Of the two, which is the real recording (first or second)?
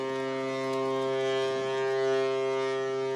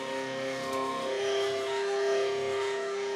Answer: first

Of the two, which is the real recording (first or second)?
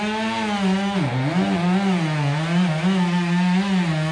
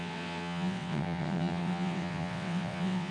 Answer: first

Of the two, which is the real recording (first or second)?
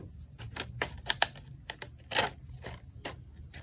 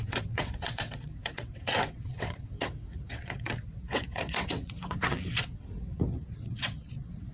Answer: first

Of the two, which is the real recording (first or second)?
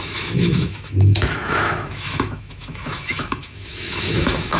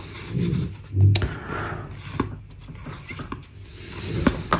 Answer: second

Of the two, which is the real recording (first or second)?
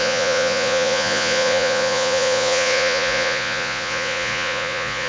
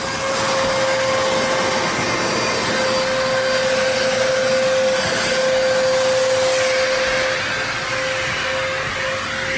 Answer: second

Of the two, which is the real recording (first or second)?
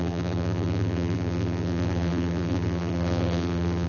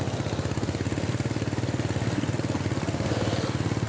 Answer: second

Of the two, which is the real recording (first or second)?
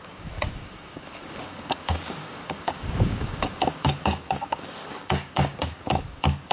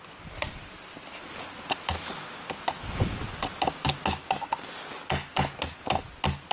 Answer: second